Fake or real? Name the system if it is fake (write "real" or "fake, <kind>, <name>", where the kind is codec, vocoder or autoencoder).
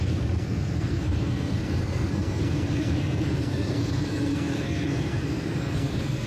fake, codec, SNAC